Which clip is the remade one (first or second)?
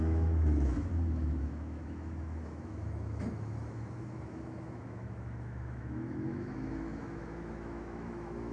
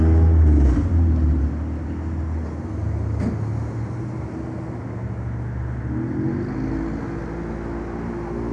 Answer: first